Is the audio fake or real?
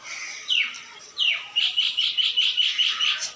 real